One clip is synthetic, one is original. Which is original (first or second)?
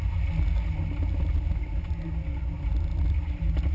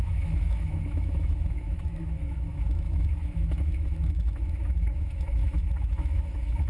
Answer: first